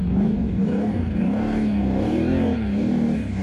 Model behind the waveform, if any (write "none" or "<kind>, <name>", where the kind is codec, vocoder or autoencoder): codec, DAC